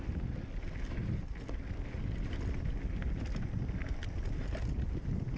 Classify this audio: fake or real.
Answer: real